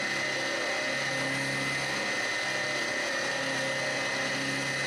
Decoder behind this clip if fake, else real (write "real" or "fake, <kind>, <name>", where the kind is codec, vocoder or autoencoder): real